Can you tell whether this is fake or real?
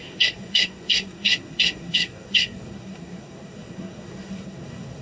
fake